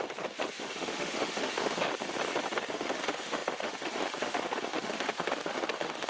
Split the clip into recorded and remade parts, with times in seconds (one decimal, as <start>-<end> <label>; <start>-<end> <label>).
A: 0.0-1.9 remade; 1.9-2.6 recorded; 2.6-6.1 remade